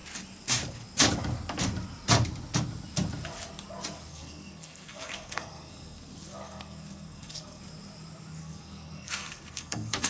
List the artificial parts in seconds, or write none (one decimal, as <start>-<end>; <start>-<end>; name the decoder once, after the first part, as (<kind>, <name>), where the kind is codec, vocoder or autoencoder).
4.1-7.6 (codec, SNAC); 8.4-10.1